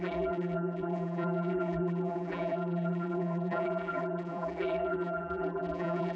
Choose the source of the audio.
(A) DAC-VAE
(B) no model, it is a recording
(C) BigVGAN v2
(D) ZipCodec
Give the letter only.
C